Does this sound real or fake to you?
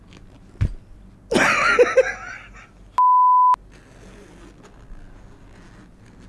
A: real